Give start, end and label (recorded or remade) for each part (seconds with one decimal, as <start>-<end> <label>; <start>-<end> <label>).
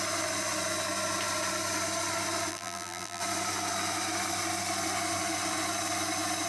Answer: 0.0-2.5 recorded; 2.5-3.2 remade; 3.2-6.5 recorded